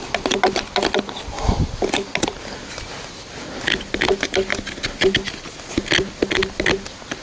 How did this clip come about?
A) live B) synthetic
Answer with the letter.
A